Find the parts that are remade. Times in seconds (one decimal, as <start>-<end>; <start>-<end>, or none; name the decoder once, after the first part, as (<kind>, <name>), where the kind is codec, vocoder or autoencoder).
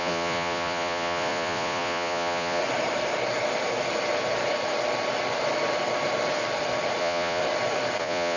0.0-2.6 (vocoder, Vocos); 7.0-7.4; 8.0-8.4